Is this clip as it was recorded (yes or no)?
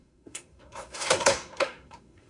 no